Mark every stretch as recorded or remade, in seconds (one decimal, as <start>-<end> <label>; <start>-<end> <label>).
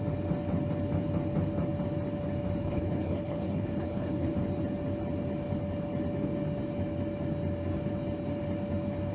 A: 0.0-2.6 recorded; 2.6-4.3 remade; 4.3-9.1 recorded